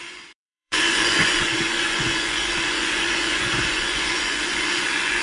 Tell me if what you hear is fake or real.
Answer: fake